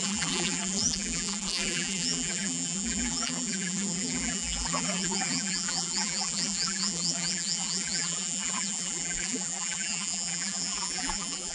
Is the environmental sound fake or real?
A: fake